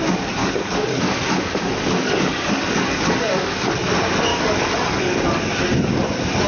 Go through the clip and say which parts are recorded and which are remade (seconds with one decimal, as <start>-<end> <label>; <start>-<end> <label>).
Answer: 0.0-0.4 recorded; 0.4-3.7 remade; 3.7-4.3 recorded; 4.3-5.2 remade; 5.2-6.5 recorded